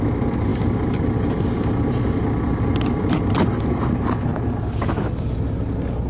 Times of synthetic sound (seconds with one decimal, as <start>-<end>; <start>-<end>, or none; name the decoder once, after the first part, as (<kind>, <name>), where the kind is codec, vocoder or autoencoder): none